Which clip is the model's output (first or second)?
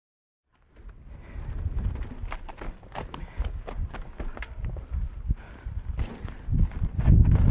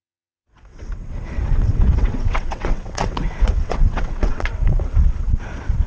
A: second